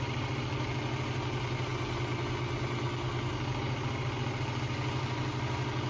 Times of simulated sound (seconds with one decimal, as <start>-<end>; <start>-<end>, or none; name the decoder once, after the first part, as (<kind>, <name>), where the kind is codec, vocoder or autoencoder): none